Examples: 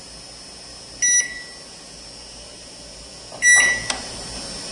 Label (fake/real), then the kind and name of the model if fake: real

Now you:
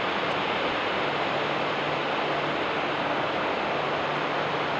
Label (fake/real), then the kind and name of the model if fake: real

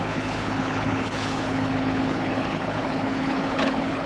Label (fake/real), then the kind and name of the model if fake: fake, codec, HILCodec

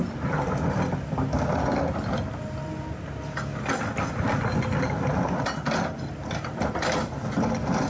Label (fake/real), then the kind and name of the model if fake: real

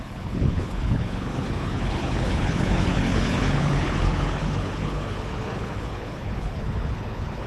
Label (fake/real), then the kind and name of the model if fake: fake, codec, HILCodec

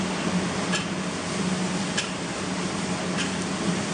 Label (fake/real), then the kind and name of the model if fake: real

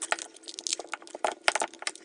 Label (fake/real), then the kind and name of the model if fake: real